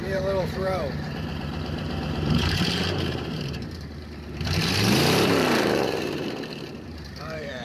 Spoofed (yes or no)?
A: yes